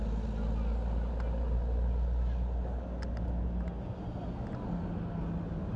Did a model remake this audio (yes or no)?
no